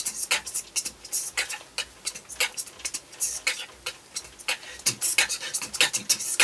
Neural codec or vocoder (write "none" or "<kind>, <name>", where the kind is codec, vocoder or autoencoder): none